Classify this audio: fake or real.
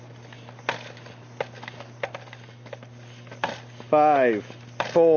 real